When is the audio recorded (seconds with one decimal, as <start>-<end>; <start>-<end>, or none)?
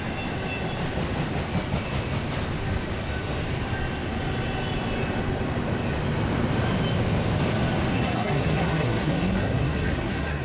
0.0-7.9